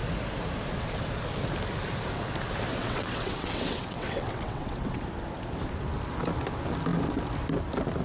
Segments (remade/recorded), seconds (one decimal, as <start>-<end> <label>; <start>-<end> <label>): 0.0-2.7 recorded; 2.7-5.0 remade; 5.0-8.0 recorded